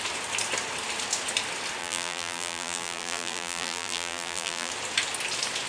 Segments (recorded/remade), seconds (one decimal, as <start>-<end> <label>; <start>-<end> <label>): 0.0-1.8 recorded; 1.8-4.7 remade; 4.7-5.7 recorded